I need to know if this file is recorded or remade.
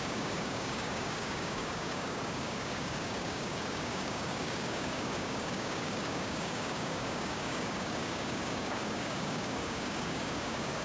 remade